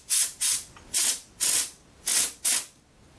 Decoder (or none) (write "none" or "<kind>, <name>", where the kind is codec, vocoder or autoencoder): none